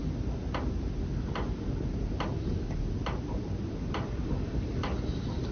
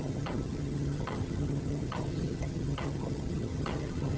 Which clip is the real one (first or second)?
first